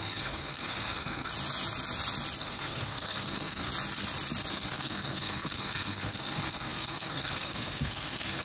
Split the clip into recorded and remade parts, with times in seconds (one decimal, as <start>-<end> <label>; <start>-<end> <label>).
0.0-1.3 remade; 1.3-2.4 recorded; 2.4-3.7 remade; 3.7-4.5 recorded; 4.5-8.4 remade